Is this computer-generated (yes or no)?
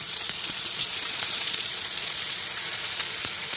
yes